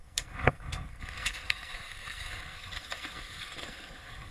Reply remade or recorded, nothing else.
remade